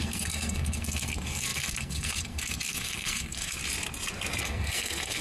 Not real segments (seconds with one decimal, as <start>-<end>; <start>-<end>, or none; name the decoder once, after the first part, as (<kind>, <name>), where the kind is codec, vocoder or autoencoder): 0.0-3.6 (codec, SNAC); 4.4-5.2